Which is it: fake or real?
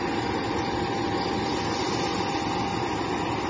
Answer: real